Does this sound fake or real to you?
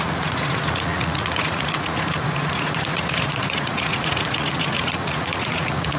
fake